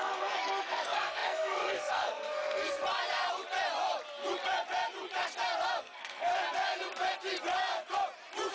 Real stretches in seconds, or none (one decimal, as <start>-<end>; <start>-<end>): 2.8-5.8; 6.3-8.5